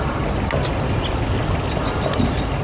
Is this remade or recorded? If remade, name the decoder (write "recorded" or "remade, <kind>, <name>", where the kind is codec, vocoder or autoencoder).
recorded